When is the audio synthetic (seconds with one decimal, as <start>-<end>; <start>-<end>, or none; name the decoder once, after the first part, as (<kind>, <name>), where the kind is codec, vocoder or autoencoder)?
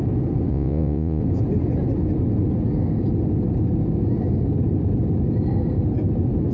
0.5-1.2 (vocoder, Vocos)